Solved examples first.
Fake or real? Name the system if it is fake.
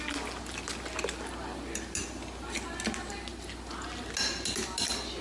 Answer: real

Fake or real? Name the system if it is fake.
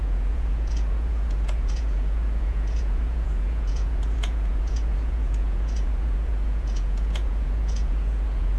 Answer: fake, vocoder, Vocos